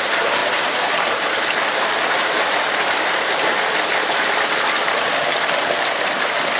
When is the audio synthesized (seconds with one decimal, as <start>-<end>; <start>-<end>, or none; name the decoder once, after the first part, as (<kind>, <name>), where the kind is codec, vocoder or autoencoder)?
0.0-6.6 (vocoder, BigVGAN v2)